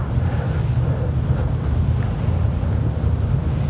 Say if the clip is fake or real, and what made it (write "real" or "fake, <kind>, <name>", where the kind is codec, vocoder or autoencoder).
real